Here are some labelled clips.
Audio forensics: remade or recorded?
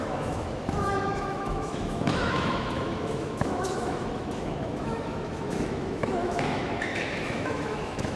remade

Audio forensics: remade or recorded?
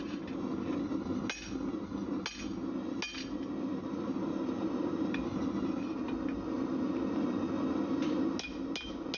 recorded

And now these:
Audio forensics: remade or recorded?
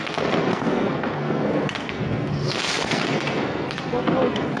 remade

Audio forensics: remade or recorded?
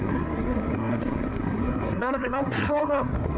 remade